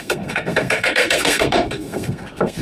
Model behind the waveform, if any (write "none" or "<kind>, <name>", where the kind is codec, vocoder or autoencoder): codec, SNAC